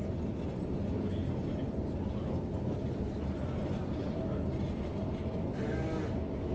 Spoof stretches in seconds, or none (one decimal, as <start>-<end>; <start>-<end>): none